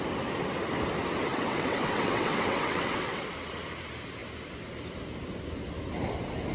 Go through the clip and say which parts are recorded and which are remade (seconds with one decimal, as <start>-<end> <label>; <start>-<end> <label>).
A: 0.0-1.3 recorded; 1.3-3.3 remade; 3.3-6.5 recorded